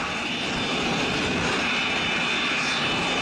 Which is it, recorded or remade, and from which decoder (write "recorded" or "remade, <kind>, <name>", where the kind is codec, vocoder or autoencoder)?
recorded